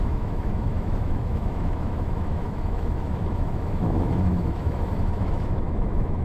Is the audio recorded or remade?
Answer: remade